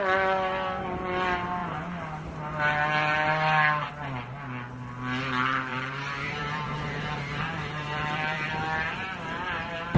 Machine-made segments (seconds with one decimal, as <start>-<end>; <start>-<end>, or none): 5.7-8.5